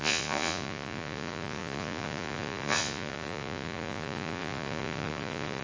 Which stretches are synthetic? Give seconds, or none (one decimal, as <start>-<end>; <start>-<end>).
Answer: 0.0-5.6